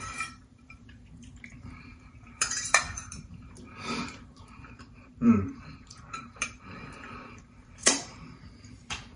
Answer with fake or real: fake